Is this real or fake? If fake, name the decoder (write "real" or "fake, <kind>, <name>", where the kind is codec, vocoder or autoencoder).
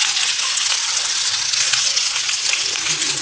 fake, vocoder, WaveNeXt